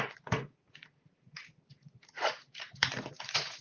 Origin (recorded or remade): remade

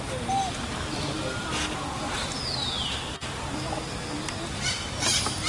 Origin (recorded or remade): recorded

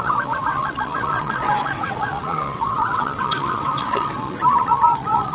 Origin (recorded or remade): remade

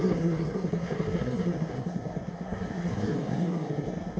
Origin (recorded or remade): remade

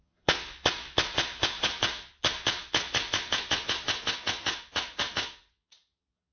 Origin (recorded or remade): remade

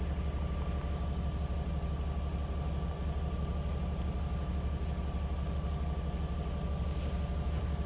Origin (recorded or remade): recorded